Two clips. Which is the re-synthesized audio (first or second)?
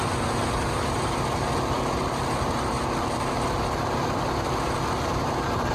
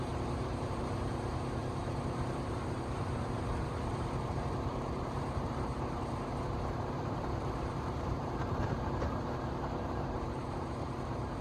second